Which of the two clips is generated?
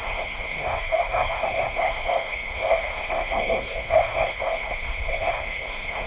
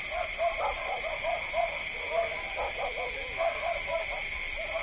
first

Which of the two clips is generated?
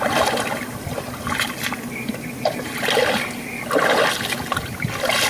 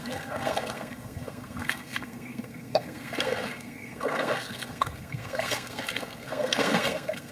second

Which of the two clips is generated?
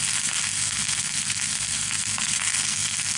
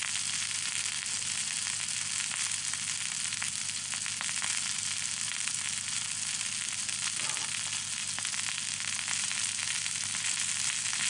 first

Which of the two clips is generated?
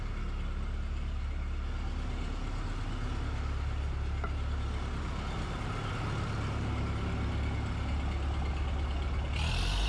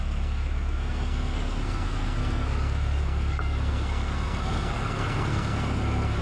second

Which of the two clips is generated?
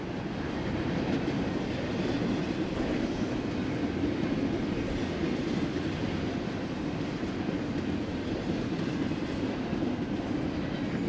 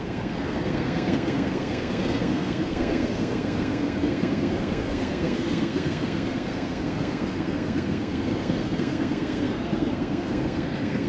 second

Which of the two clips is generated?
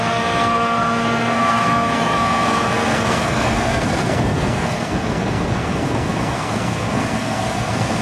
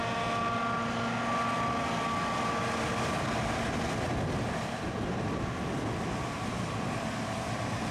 first